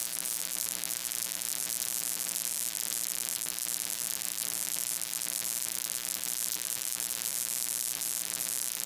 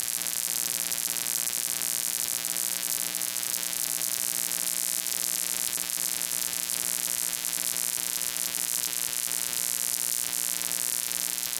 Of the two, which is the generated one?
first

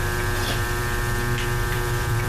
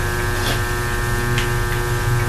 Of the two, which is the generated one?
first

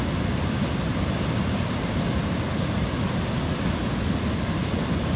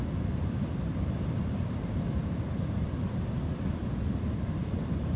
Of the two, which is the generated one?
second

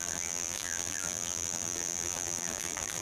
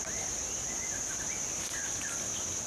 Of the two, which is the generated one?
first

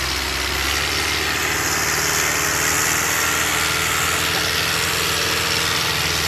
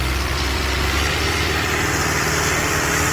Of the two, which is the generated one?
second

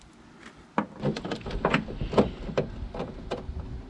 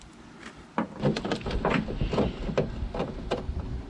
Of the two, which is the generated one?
second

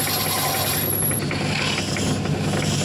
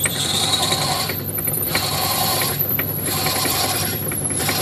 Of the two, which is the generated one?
second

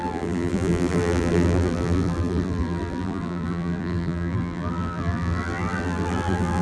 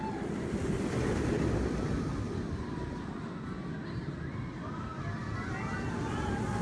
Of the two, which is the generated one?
first